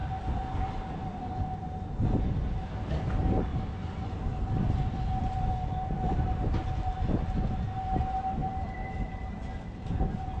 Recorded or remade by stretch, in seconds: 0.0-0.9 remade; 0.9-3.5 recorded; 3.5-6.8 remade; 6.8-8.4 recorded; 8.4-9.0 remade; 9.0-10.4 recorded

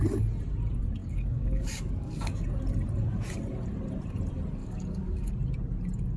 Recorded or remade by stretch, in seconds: 0.0-1.0 recorded; 1.0-2.4 remade; 2.4-4.6 recorded; 4.6-5.3 remade; 5.3-6.2 recorded

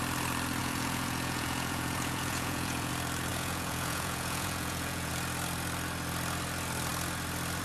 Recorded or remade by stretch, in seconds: 0.0-0.6 recorded; 0.6-2.9 remade; 2.9-3.3 recorded; 3.3-5.1 remade; 5.1-7.6 recorded

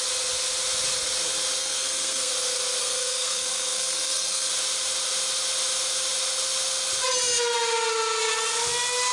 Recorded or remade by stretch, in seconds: 0.0-1.6 recorded; 1.6-2.3 remade; 2.3-2.8 recorded; 2.8-4.5 remade; 4.5-9.1 recorded

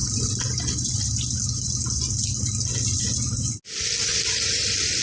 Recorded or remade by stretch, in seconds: 0.0-5.0 recorded

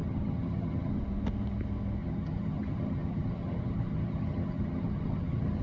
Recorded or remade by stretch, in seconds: 0.0-1.0 remade; 1.0-2.0 recorded; 2.0-5.6 remade

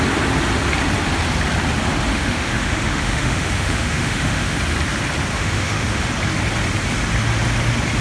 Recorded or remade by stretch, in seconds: 0.0-2.1 recorded; 2.1-4.6 remade; 4.6-5.3 recorded; 5.3-6.1 remade; 6.1-8.0 recorded

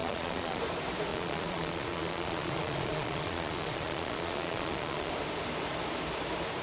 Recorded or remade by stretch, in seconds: 0.0-0.6 remade; 0.6-1.1 recorded; 1.1-5.1 remade; 5.1-6.6 recorded